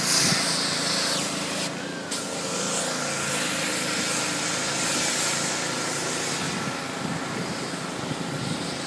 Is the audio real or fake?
real